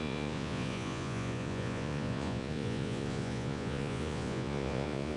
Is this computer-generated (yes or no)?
yes